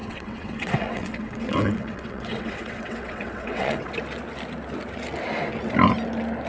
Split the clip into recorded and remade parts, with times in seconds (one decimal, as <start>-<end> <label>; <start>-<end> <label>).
0.0-3.9 remade; 3.9-6.5 recorded